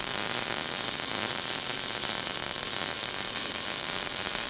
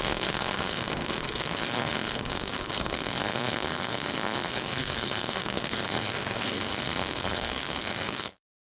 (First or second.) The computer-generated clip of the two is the second